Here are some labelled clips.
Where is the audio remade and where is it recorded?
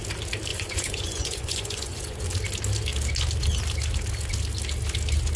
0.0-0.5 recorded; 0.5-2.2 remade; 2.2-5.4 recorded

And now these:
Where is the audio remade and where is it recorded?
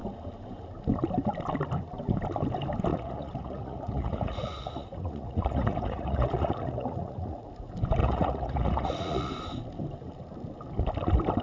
0.0-2.9 recorded; 2.9-7.5 remade; 7.5-8.0 recorded; 8.0-9.3 remade; 9.3-11.4 recorded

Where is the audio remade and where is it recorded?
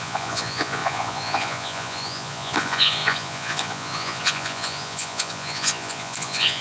0.0-6.6 remade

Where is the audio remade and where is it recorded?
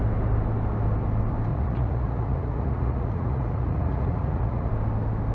0.0-1.5 recorded; 1.5-4.7 remade; 4.7-5.3 recorded